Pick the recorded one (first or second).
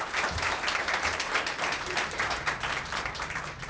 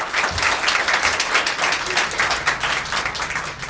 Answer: second